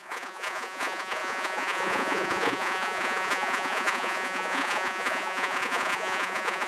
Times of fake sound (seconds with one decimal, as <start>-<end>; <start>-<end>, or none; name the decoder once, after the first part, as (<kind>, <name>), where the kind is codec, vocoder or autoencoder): 0.0-6.7 (vocoder, Vocos)